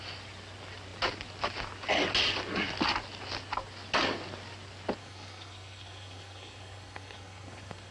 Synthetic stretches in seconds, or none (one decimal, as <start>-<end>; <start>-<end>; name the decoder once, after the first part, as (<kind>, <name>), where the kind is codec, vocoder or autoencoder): 5.0-7.9 (codec, SNAC)